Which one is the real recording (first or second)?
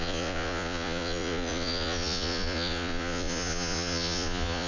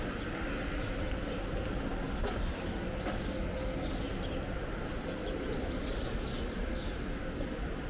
second